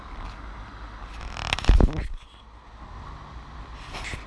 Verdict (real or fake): real